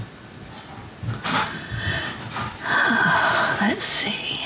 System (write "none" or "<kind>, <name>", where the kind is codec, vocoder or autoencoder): none